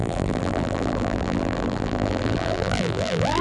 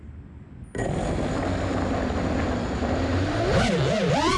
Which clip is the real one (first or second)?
second